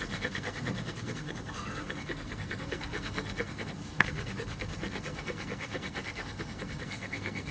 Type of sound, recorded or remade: remade